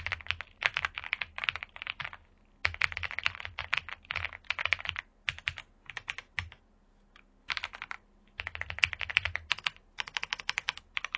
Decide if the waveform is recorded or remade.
recorded